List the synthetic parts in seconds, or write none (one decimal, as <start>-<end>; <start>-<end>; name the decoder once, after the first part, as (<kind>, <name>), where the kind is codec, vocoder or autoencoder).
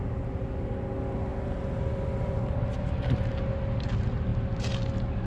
none